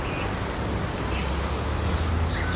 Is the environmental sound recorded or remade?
recorded